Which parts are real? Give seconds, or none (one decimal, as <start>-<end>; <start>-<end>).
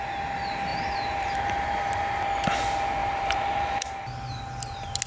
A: 0.0-0.7; 2.0-3.0; 4.0-5.1